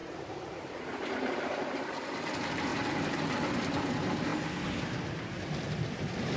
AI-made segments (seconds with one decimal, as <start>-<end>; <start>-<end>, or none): 0.0-2.7; 3.8-4.3; 4.8-6.4